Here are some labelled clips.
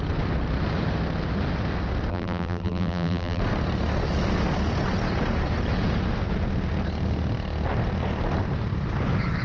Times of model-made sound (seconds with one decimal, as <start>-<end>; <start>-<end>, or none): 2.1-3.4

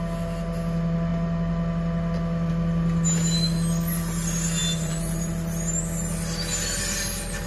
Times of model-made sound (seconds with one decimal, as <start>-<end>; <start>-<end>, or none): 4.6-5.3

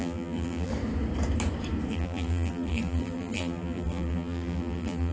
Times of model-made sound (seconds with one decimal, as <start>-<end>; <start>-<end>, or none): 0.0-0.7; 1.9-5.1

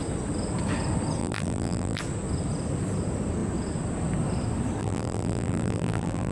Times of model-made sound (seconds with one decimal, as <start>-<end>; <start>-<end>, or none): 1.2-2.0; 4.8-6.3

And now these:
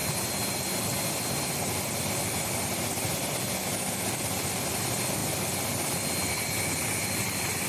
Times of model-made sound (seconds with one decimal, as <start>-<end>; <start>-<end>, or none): none

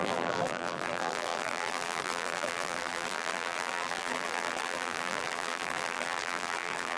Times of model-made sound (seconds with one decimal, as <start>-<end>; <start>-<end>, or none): 0.0-7.0